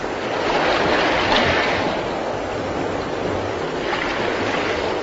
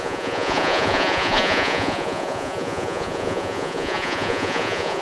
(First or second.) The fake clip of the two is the second